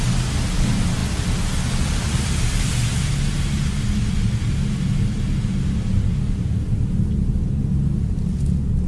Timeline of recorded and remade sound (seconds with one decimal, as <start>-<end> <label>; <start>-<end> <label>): 0.0-8.9 recorded